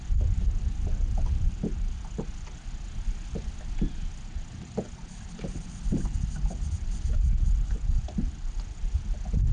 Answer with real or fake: real